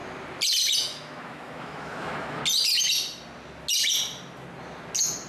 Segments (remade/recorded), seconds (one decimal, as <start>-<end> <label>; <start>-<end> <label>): 0.0-0.8 recorded; 0.8-2.4 remade; 2.4-5.3 recorded